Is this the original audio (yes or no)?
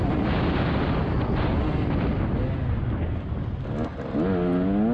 yes